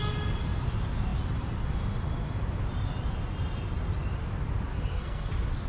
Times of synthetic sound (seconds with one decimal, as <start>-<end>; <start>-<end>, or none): 4.7-5.3

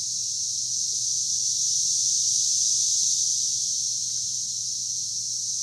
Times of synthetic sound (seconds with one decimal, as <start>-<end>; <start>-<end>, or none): none